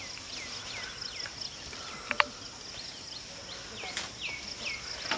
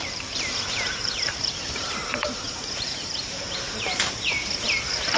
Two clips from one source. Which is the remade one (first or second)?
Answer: second